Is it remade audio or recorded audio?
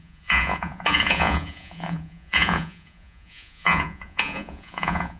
remade